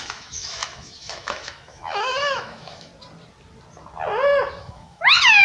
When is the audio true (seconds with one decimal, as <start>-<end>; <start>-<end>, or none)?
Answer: 2.9-4.6